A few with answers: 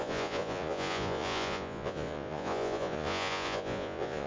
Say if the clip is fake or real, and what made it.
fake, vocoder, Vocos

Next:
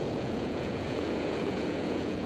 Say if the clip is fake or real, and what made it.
fake, vocoder, Vocos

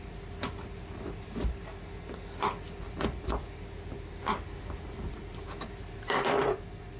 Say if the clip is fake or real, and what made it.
real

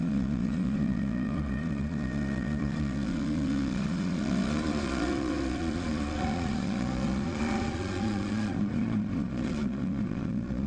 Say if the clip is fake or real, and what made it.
fake, vocoder, Vocos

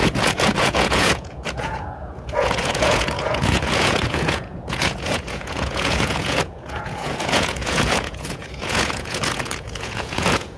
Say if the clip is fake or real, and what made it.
fake, vocoder, Vocos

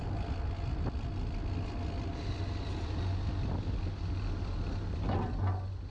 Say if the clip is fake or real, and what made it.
real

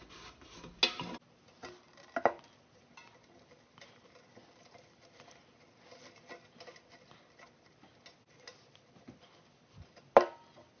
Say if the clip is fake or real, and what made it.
real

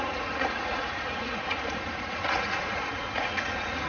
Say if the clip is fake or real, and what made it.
fake, vocoder, Vocos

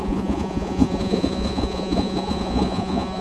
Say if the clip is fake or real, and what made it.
fake, vocoder, Vocos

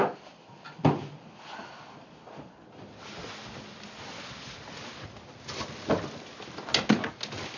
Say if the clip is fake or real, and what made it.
real